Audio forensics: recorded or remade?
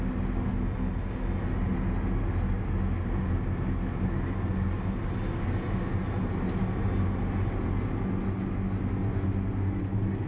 recorded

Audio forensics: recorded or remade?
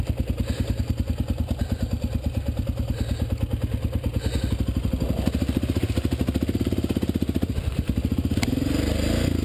recorded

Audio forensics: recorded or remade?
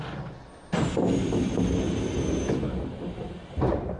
recorded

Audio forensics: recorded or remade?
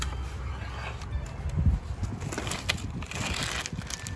recorded